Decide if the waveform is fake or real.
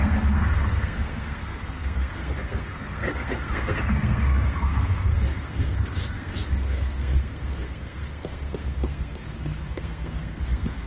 fake